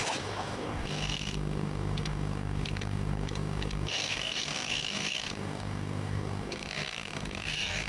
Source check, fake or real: fake